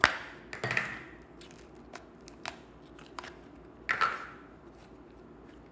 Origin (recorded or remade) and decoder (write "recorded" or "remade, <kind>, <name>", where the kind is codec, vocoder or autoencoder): recorded